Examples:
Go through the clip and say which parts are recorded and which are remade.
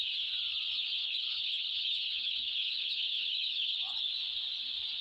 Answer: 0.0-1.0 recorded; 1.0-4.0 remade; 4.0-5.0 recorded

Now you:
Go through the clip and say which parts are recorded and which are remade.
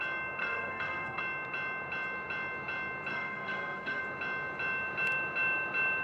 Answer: 0.0-0.4 recorded; 0.4-1.2 remade; 1.2-3.1 recorded; 3.1-4.0 remade; 4.0-6.0 recorded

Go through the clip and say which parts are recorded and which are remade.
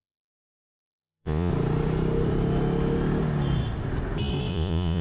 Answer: 0.0-1.5 remade; 1.5-4.5 recorded; 4.5-5.0 remade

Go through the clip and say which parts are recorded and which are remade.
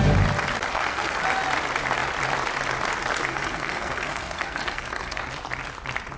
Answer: 0.0-0.7 recorded; 0.7-1.2 remade; 1.2-3.3 recorded; 3.3-5.2 remade; 5.2-6.2 recorded